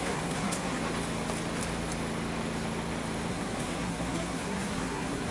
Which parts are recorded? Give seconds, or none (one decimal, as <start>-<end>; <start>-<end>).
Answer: 0.8-3.3